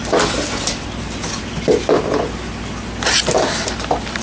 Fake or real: real